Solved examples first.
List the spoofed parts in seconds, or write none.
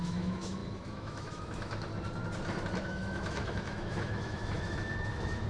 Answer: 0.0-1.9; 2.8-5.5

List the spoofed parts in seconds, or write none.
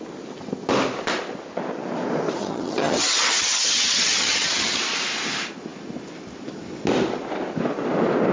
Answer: 2.4-4.8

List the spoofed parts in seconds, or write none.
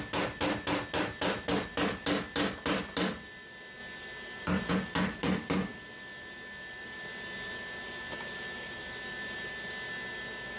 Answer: none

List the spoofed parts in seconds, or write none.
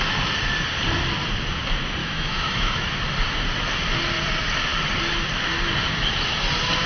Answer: 2.0-3.0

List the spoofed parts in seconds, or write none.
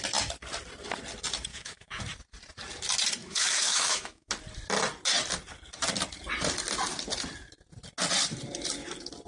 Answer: 1.5-2.0; 3.2-4.3